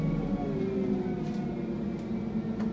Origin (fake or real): real